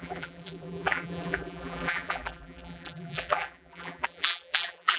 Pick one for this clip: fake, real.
fake